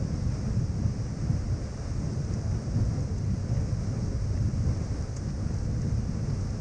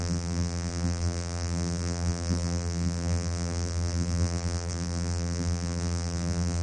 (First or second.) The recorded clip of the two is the first